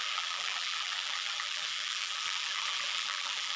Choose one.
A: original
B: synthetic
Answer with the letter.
B